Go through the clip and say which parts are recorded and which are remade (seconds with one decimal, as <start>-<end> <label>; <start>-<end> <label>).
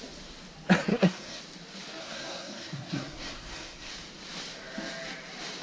0.0-0.9 recorded; 0.9-1.4 remade; 1.4-2.0 recorded; 2.0-3.9 remade; 3.9-5.6 recorded